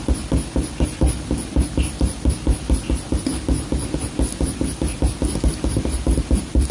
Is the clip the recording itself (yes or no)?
yes